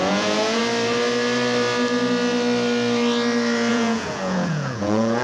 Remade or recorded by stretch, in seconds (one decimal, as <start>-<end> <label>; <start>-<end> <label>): 0.0-0.6 remade; 0.6-3.7 recorded; 3.7-5.2 remade